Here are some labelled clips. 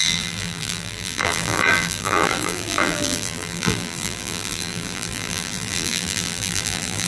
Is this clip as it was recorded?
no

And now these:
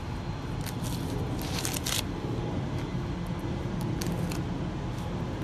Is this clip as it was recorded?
yes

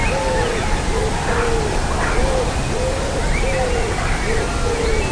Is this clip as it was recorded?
yes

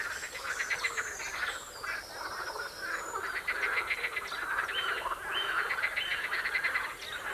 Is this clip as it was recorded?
yes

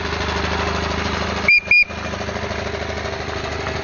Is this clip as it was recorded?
yes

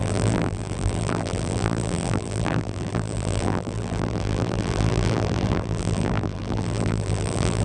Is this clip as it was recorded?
no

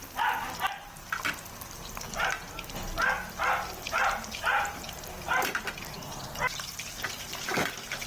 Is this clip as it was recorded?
yes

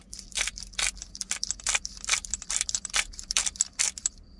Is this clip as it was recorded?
no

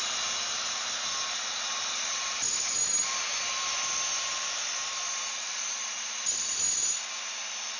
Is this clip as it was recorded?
no